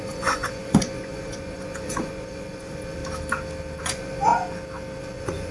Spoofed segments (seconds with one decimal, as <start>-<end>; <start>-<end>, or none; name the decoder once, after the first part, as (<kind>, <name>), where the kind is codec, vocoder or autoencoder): 0.0-3.0 (vocoder, Vocos); 3.8-4.3; 5.0-5.5